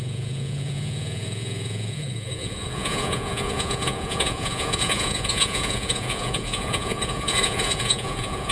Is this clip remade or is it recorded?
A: remade